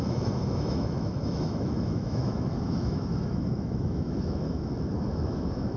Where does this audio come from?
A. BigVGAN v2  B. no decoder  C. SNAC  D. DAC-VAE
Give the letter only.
D